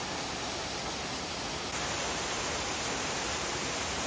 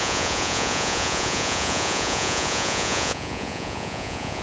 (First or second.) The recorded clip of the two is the first